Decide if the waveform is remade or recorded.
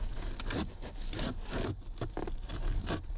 recorded